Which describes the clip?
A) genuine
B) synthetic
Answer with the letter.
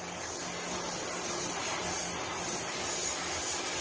A